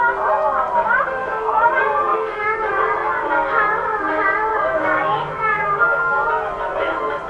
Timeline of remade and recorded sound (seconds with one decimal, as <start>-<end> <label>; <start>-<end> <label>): 0.0-1.2 recorded; 1.2-1.7 remade; 1.7-2.1 recorded; 2.1-2.7 remade; 2.7-4.5 recorded; 4.5-6.3 remade; 6.3-7.3 recorded